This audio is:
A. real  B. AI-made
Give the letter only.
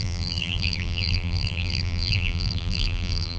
B